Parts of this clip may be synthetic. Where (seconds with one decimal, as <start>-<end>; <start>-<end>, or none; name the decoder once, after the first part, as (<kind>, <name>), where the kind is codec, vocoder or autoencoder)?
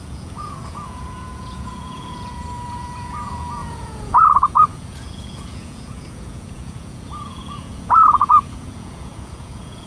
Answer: 0.0-9.9 (vocoder, Vocos)